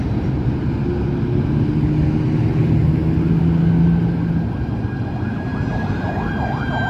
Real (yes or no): yes